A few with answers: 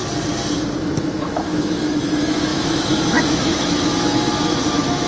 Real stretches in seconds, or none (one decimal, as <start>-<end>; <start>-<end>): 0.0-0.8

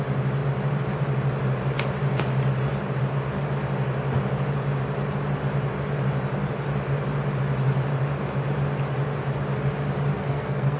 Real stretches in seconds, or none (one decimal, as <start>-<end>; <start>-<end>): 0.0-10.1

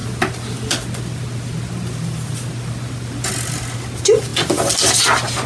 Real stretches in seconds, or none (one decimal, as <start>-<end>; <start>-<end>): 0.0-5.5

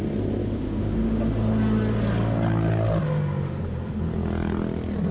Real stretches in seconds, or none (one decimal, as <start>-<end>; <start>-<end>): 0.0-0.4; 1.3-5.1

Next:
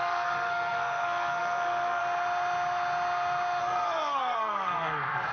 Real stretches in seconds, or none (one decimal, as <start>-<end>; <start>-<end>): 2.0-3.6

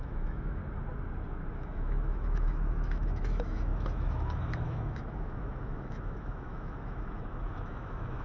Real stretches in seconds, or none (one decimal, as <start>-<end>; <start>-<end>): 0.6-1.5